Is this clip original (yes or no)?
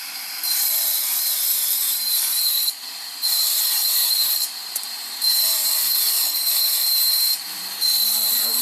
no